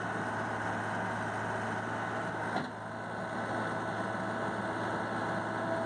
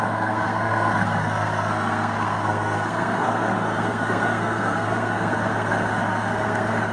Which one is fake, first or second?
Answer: second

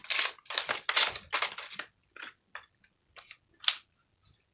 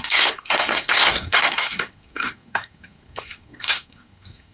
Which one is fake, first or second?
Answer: second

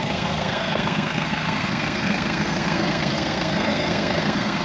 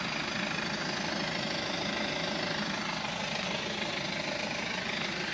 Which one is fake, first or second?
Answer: first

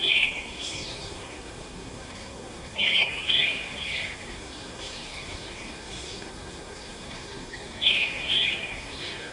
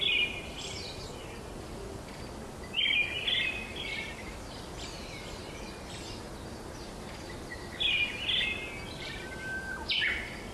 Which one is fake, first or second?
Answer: first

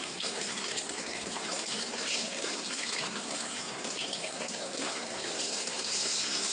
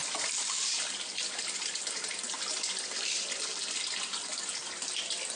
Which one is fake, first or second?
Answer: first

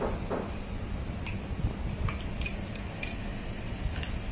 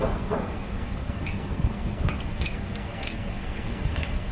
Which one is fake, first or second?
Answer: second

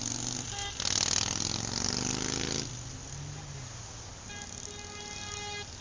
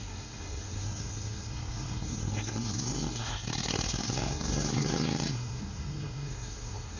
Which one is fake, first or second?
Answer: second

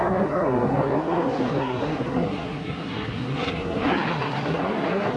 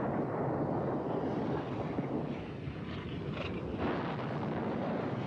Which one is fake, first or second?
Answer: first